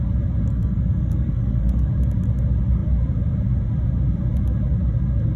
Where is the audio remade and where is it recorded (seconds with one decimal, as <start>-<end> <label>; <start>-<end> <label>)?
0.0-0.5 recorded; 0.5-1.9 remade; 1.9-5.4 recorded